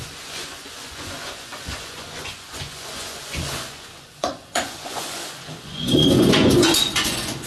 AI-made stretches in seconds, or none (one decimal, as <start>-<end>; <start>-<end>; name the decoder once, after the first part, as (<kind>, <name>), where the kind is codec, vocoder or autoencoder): 0.0-7.5 (vocoder, Vocos)